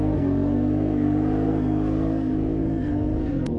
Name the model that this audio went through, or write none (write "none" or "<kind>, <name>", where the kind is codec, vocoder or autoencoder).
codec, SNAC